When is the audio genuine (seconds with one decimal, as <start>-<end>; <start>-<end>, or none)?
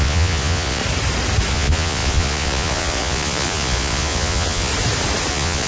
0.8-1.5; 4.7-5.3